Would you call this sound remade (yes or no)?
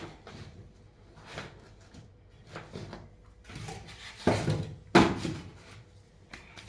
no